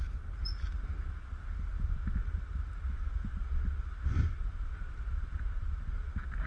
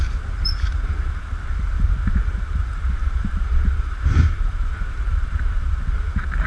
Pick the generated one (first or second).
second